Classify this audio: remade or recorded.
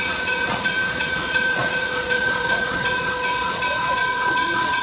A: remade